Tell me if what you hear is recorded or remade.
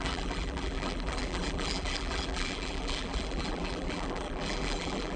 remade